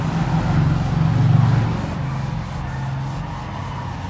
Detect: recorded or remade recorded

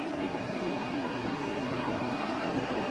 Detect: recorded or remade remade